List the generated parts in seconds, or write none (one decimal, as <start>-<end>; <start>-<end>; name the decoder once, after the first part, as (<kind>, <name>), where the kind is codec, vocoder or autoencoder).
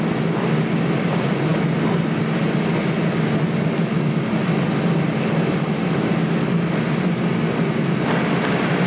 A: none